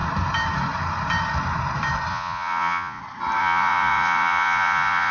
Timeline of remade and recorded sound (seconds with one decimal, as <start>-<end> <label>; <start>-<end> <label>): 0.0-2.1 recorded; 2.1-3.0 remade; 3.0-3.4 recorded; 3.4-5.1 remade